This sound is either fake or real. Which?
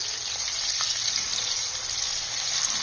real